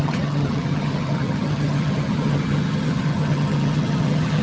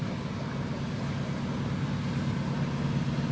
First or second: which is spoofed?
first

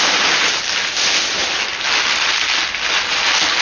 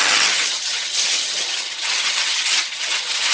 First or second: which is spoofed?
second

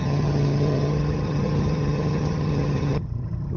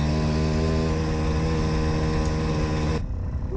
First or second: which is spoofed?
first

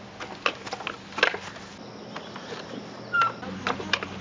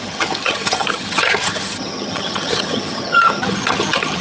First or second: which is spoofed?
second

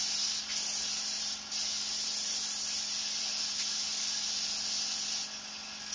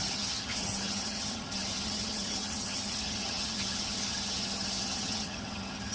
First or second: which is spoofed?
second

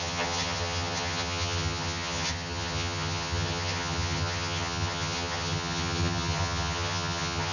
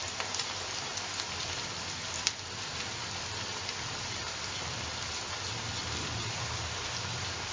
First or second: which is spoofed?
first